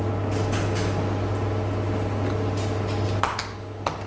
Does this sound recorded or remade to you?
recorded